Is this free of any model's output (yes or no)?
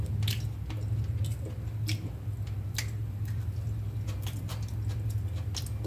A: yes